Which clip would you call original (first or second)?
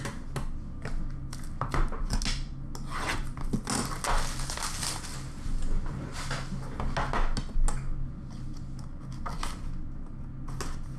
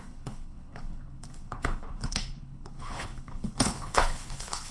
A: first